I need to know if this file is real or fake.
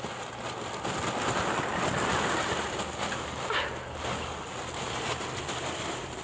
real